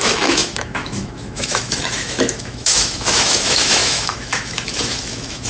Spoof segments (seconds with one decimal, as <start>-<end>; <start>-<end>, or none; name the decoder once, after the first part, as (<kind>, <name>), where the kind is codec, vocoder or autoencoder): 0.0-5.5 (autoencoder, DAC-VAE)